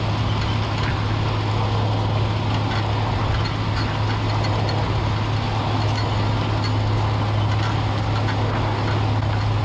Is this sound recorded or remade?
recorded